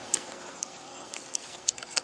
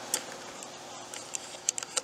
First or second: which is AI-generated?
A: first